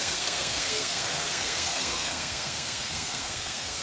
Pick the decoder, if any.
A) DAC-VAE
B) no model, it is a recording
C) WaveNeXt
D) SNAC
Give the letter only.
D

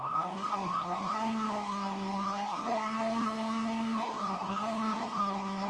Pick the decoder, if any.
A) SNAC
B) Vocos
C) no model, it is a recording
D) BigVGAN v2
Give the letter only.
A